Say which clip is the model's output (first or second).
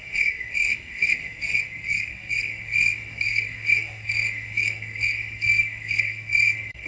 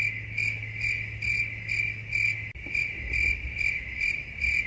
first